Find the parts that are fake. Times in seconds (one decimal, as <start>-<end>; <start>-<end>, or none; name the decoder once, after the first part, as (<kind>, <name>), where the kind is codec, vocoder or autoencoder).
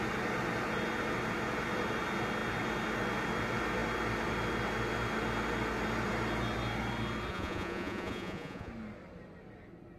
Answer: 7.3-8.7 (vocoder, Vocos)